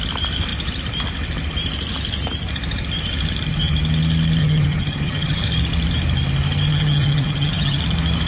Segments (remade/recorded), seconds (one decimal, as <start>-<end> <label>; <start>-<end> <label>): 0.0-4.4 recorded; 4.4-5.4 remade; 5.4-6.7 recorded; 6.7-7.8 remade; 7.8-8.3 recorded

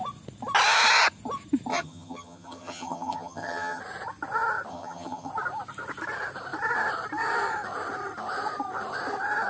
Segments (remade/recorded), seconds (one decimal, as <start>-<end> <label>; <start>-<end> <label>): 0.0-1.7 recorded; 1.7-3.8 remade; 3.8-4.7 recorded; 4.7-5.3 remade; 5.3-9.5 recorded

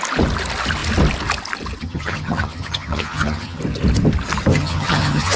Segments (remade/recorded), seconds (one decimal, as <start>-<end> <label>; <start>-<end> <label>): 0.0-1.8 recorded; 1.8-3.6 remade; 3.6-4.5 recorded; 4.5-5.4 remade